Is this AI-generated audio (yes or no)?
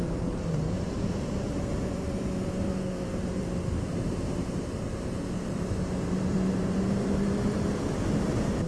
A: yes